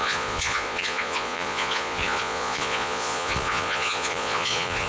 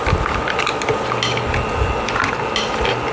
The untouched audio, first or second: second